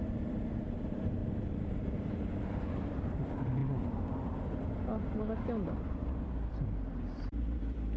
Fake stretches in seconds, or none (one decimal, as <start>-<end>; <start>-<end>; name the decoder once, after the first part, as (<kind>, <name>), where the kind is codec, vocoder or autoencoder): 0.0-1.2 (vocoder, BigVGAN v2); 1.7-3.6; 5.8-8.0